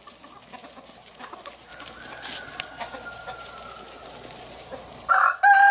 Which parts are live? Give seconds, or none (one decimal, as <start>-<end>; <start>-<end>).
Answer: 0.0-5.7